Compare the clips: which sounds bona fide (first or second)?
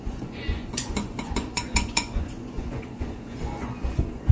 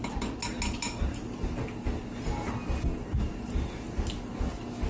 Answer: second